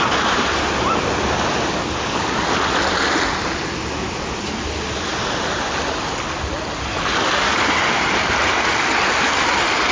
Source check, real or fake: real